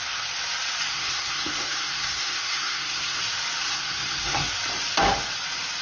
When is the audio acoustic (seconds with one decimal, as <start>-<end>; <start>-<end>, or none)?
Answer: 0.0-0.9; 3.2-3.6; 4.5-5.8